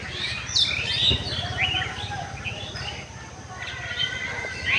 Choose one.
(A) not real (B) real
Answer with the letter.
A